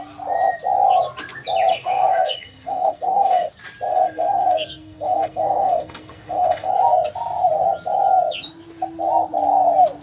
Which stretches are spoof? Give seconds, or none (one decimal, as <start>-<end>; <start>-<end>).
1.7-3.5; 3.9-6.7